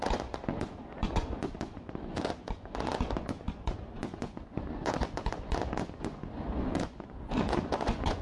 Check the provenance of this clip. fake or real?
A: fake